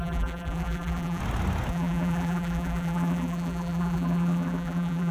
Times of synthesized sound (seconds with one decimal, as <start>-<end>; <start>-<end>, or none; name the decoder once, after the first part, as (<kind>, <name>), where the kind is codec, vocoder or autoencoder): 0.0-1.2 (vocoder, BigVGAN v2); 1.7-5.1